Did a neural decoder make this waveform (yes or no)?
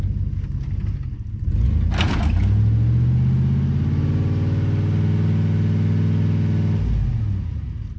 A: no